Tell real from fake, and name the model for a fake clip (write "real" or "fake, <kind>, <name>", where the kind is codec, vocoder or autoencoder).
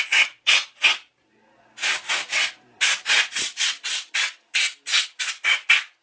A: real